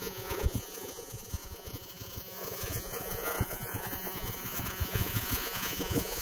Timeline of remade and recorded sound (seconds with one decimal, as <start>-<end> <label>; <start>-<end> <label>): 0.0-6.2 remade

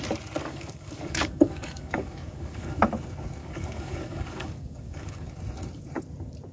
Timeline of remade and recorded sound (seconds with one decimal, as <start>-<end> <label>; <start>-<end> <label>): 0.0-0.4 recorded; 0.4-2.8 remade; 2.8-3.4 recorded; 3.4-5.4 remade; 5.4-6.5 recorded

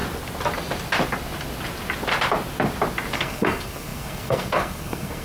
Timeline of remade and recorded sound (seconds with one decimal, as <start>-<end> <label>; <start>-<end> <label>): 0.0-3.1 recorded; 3.1-5.2 remade

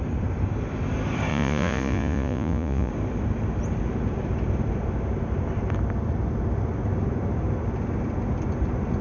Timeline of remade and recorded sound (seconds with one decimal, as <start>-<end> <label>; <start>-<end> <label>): 0.0-1.3 recorded; 1.3-2.9 remade; 2.9-9.0 recorded

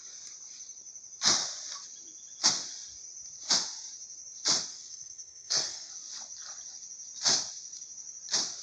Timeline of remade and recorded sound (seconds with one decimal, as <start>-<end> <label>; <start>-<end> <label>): 0.0-4.7 recorded; 4.7-5.9 remade; 5.9-8.6 recorded

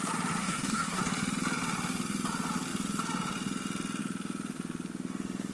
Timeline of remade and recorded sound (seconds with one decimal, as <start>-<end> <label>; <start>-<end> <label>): 0.0-0.4 recorded; 0.4-1.0 remade; 1.0-5.5 recorded

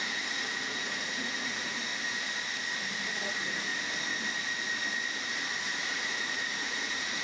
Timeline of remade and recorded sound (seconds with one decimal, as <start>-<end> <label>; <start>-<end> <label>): 0.0-1.9 remade; 1.9-3.1 recorded; 3.1-3.7 remade; 3.7-5.8 recorded; 5.8-7.2 remade